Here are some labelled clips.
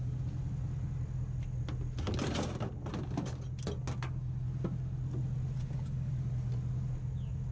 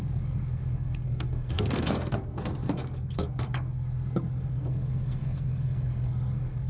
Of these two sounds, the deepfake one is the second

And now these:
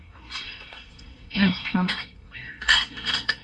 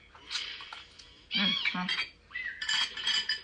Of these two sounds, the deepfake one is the first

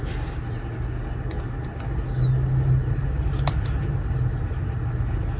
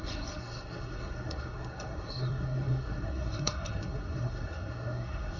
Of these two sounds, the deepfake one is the second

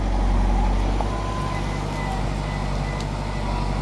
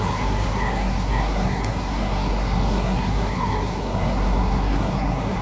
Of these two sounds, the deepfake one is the second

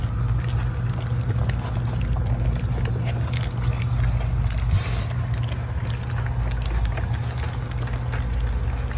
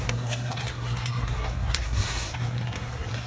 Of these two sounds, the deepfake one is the second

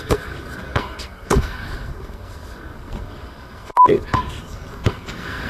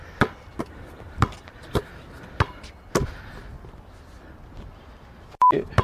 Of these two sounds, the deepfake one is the first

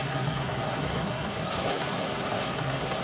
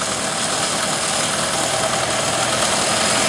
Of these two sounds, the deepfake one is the first